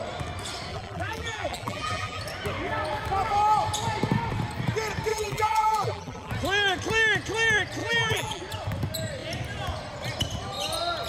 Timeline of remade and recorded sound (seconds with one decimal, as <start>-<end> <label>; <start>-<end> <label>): 0.0-0.7 recorded; 0.7-2.2 remade; 2.2-5.1 recorded; 5.1-6.3 remade; 6.3-7.8 recorded; 7.8-8.4 remade; 8.4-11.1 recorded